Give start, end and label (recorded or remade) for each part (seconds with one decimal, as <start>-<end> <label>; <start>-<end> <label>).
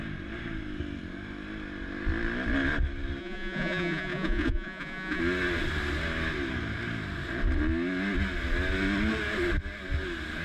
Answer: 0.0-3.2 recorded; 3.2-5.2 remade; 5.2-10.4 recorded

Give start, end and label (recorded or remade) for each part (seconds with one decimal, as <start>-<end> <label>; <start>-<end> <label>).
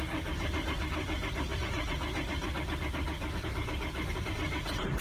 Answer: 0.0-5.0 recorded